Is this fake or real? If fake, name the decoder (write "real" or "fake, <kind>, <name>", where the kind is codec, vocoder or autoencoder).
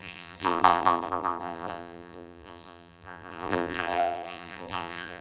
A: fake, vocoder, BigVGAN v2